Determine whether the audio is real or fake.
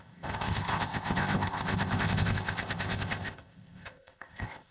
fake